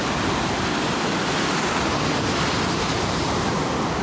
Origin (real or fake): real